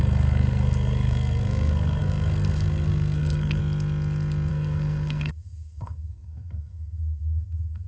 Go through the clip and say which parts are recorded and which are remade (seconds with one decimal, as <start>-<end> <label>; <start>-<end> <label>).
0.0-3.6 remade; 3.6-4.5 recorded; 4.5-7.9 remade